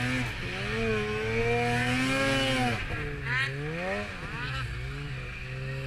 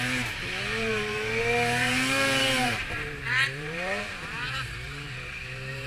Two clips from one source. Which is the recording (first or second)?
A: first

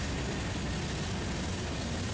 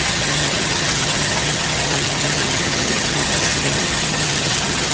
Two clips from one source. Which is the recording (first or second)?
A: first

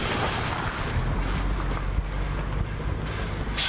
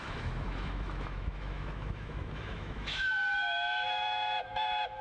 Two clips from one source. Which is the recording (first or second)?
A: first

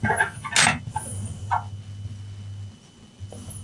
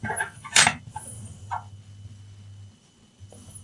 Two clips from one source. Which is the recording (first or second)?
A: first